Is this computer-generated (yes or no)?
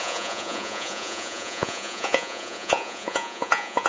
yes